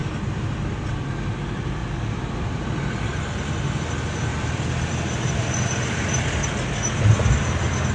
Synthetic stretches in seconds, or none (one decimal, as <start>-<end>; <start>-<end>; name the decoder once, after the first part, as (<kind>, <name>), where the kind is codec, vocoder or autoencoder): 0.0-1.1 (vocoder, BigVGAN v2); 1.8-3.2; 4.3-5.9